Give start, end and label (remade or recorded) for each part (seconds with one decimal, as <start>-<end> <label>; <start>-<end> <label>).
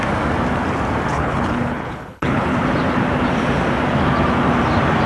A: 0.0-1.1 recorded; 1.1-2.6 remade; 2.6-5.1 recorded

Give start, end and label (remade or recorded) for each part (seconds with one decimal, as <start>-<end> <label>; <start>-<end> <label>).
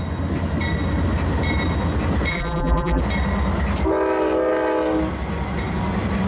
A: 0.0-2.3 recorded; 2.3-3.0 remade; 3.0-6.3 recorded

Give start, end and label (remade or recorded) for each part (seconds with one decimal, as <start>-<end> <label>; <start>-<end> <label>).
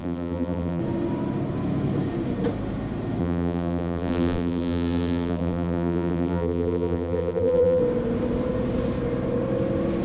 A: 0.0-0.8 remade; 0.8-3.2 recorded; 3.2-7.8 remade; 7.8-10.0 recorded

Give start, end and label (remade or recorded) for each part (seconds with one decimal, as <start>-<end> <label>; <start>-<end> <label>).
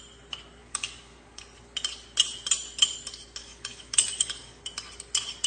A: 0.0-0.6 recorded; 0.6-1.4 remade; 1.4-3.4 recorded; 3.4-4.6 remade; 4.6-5.5 recorded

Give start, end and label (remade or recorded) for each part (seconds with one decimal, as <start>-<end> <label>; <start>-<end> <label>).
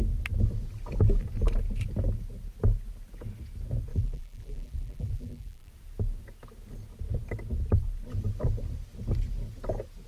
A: 0.0-3.9 recorded; 3.9-5.7 remade; 5.7-10.1 recorded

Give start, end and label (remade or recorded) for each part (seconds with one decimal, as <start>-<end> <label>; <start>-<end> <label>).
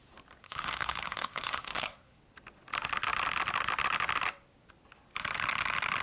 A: 0.0-0.4 recorded; 0.4-2.2 remade; 2.2-6.0 recorded